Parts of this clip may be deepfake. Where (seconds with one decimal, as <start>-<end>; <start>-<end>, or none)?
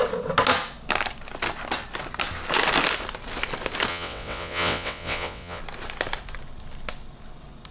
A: 3.9-5.6